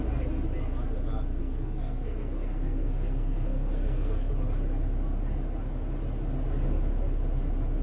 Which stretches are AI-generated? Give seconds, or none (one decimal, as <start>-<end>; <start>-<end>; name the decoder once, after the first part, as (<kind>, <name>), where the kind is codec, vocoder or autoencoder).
1.4-4.3 (codec, SNAC)